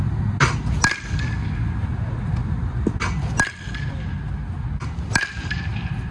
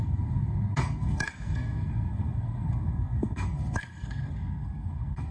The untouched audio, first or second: first